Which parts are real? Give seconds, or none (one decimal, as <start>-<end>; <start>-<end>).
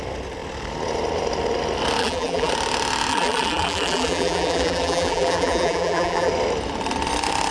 0.0-2.0; 2.5-3.1; 6.3-7.5